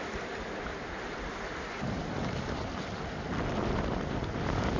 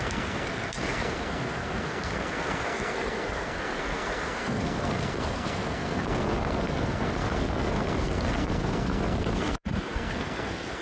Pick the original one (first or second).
first